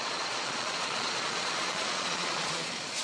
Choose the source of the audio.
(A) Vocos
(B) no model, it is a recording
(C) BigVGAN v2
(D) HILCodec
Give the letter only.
A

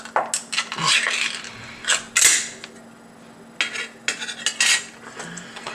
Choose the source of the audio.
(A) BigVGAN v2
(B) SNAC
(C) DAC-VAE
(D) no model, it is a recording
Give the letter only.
D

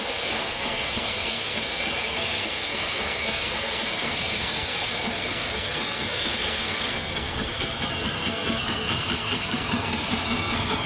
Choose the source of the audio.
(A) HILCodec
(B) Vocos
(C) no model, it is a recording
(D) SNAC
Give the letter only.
D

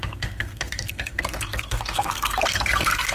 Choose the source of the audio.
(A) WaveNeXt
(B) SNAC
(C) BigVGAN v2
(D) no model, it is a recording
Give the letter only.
B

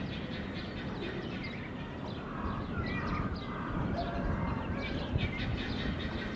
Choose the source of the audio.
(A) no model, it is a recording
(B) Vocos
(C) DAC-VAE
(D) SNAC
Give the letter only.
A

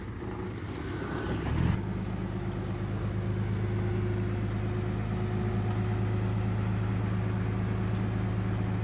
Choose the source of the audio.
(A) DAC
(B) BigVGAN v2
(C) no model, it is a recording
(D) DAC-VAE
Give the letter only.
C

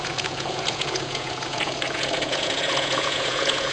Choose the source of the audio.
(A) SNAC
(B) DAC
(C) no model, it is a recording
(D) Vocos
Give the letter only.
D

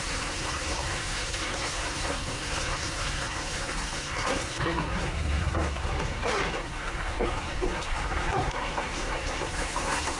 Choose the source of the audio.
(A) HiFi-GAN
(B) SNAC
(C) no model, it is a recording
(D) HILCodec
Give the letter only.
B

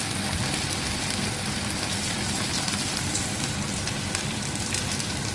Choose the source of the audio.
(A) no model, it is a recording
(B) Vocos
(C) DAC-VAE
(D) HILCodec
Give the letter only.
A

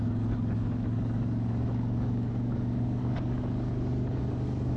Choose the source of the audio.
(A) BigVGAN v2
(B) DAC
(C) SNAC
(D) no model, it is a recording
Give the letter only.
B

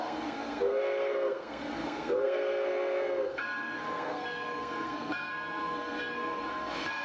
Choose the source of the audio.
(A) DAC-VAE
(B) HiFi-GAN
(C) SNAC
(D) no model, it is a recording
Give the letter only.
C